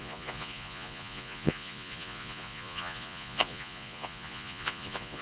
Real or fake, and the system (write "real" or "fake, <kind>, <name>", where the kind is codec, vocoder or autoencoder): fake, vocoder, Vocos